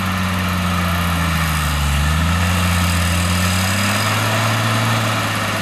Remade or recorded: recorded